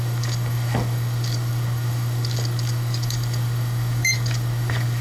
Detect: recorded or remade remade